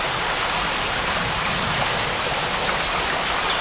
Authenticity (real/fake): real